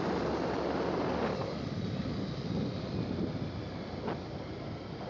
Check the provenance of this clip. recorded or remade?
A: recorded